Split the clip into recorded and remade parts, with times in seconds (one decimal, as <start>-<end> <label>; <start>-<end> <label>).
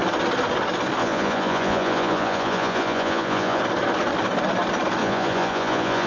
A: 0.0-1.0 recorded; 1.0-3.6 remade; 3.6-5.0 recorded; 5.0-6.1 remade